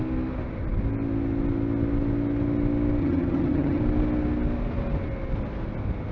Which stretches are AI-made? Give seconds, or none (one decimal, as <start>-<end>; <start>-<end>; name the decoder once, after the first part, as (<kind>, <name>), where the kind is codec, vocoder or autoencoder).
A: 3.0-3.8 (vocoder, HiFi-GAN)